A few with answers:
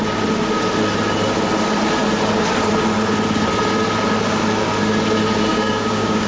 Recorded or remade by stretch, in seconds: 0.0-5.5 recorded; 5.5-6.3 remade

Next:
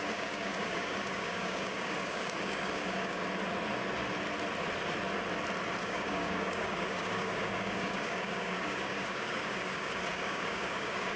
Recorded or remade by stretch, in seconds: 0.0-3.2 remade; 3.2-5.8 recorded; 5.8-11.2 remade

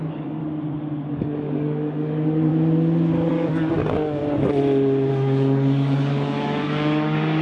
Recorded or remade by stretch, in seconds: 0.0-0.4 remade; 0.4-1.1 recorded; 1.1-2.5 remade; 2.5-3.3 recorded; 3.3-4.2 remade; 4.2-5.1 recorded; 5.1-7.4 remade

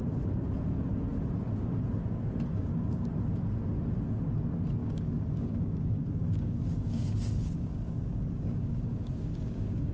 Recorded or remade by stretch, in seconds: 0.0-2.5 recorded; 2.5-3.1 remade; 3.1-4.8 recorded; 4.8-9.9 remade